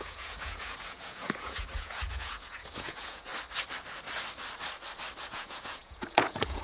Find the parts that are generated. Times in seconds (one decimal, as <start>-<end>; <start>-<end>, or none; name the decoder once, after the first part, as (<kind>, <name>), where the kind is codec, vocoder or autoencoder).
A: 0.0-3.3 (vocoder, Vocos); 5.2-6.6